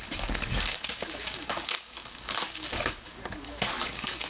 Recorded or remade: remade